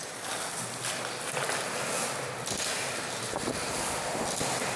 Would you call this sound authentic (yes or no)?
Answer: no